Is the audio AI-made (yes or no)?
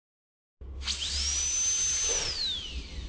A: no